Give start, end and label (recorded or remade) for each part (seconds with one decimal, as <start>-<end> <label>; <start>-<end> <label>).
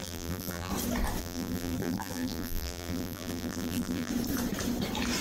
0.0-0.7 remade; 0.7-1.2 recorded; 1.2-4.1 remade; 4.1-5.2 recorded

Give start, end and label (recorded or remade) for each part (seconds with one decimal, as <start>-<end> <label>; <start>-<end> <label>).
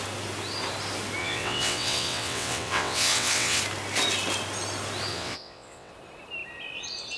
0.0-1.2 recorded; 1.2-3.6 remade; 3.6-5.1 recorded; 5.1-5.9 remade; 5.9-7.2 recorded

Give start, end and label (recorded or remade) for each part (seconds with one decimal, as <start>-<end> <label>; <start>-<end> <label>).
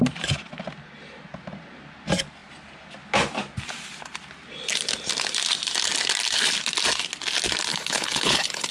0.0-7.7 recorded; 7.7-8.7 remade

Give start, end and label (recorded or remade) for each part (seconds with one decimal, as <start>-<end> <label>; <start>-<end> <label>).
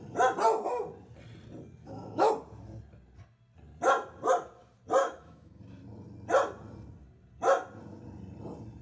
0.0-1.8 recorded; 1.8-2.3 remade; 2.3-5.0 recorded; 5.0-5.6 remade; 5.6-8.8 recorded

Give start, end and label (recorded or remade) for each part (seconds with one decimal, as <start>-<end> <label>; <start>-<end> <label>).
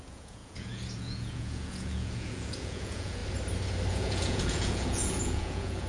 0.0-3.2 remade; 3.2-3.9 recorded; 3.9-5.9 remade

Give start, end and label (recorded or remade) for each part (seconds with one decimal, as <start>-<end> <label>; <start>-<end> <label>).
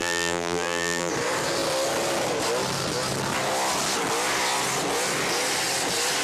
0.0-1.1 remade; 1.1-6.2 recorded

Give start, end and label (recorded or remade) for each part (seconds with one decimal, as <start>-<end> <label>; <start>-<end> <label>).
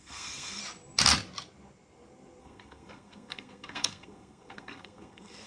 0.0-0.6 remade; 0.6-2.4 recorded; 2.4-5.5 remade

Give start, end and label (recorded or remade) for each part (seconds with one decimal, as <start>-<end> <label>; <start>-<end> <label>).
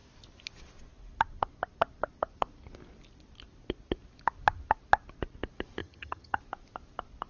0.0-5.8 recorded; 5.8-6.4 remade; 6.4-7.3 recorded